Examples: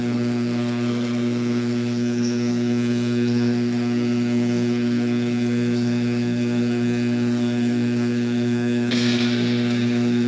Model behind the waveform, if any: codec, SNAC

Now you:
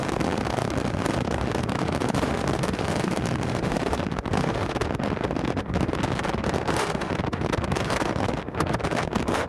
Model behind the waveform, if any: autoencoder, DAC-VAE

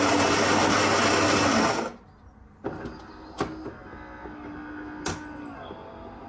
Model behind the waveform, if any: none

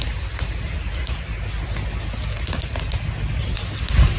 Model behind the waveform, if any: none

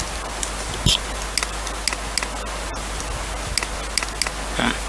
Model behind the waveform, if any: none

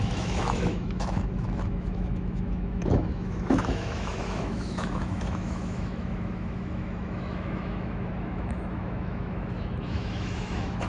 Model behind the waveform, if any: autoencoder, DAC-VAE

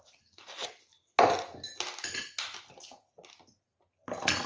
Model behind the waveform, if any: none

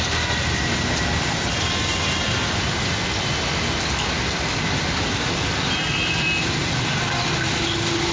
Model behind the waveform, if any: none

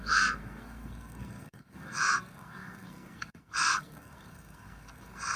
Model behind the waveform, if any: codec, SNAC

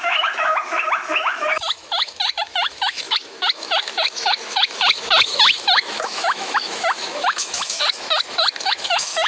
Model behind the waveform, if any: autoencoder, DAC-VAE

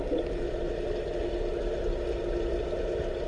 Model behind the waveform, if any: none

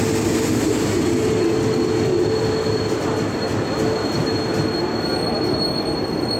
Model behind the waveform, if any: none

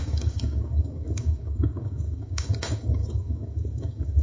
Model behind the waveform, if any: codec, DAC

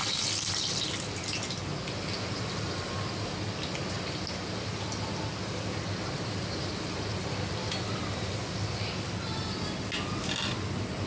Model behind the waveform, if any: none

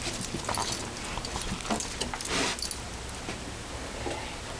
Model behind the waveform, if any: none